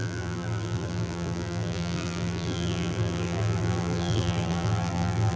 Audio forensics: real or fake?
fake